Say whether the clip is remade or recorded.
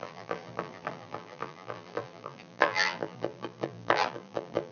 remade